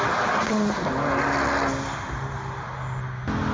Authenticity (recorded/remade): recorded